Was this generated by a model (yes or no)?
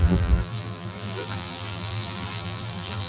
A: yes